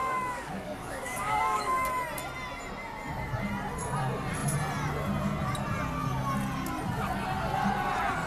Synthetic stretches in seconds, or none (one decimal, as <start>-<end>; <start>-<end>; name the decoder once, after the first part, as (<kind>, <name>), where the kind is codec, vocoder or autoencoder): 0.0-1.9 (codec, DAC)